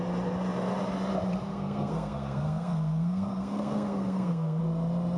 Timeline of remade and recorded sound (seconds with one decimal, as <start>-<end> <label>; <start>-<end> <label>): 0.0-1.5 recorded; 1.5-4.6 remade; 4.6-5.2 recorded